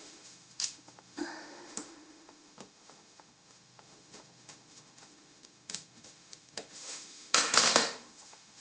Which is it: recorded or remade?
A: remade